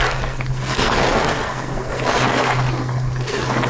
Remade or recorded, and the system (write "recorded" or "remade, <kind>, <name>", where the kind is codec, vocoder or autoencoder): remade, codec, SNAC